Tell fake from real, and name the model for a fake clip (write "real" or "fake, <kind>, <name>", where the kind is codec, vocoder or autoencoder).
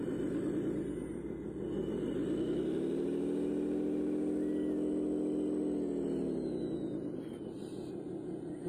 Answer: real